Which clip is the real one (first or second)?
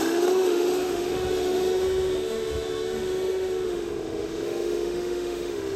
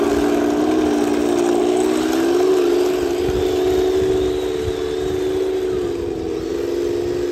second